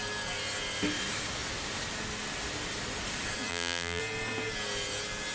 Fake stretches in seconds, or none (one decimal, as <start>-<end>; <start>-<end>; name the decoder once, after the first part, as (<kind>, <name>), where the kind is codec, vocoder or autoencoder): 3.5-4.0 (vocoder, BigVGAN v2)